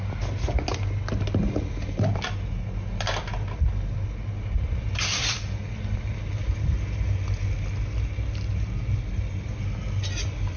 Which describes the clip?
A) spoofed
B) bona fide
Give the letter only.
B